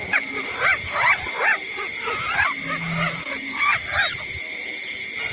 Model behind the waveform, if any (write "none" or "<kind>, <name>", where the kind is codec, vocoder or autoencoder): none